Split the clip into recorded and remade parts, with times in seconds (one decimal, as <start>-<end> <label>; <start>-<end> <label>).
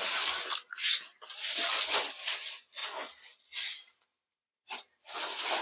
0.0-5.6 recorded